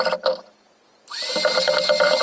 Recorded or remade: recorded